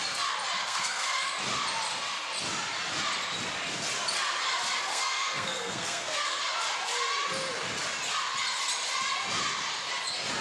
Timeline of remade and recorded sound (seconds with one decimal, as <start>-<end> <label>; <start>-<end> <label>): 0.0-0.6 recorded; 0.6-1.3 remade; 1.3-4.9 recorded; 4.9-6.4 remade; 6.4-10.4 recorded